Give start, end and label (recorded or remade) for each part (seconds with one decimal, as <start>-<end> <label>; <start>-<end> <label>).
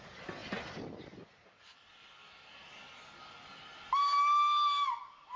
0.0-5.4 recorded